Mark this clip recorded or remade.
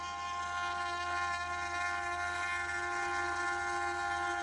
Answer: recorded